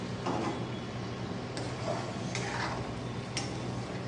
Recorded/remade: recorded